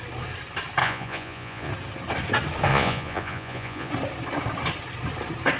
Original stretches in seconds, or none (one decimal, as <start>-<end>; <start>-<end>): 0.0-0.8; 1.7-2.7; 3.9-5.6